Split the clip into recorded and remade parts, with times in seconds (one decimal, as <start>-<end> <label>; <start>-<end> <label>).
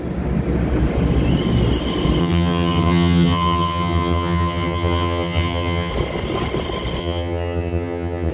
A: 0.0-2.2 recorded; 2.2-5.9 remade; 5.9-7.0 recorded; 7.0-8.3 remade